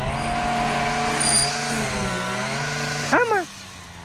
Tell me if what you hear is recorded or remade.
recorded